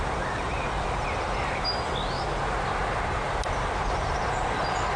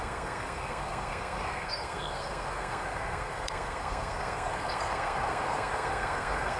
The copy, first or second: second